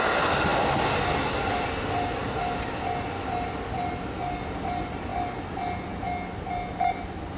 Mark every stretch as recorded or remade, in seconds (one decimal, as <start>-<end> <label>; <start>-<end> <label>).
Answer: 0.0-7.4 recorded